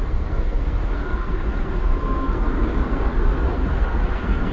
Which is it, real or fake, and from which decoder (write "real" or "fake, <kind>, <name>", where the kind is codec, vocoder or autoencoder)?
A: fake, codec, SNAC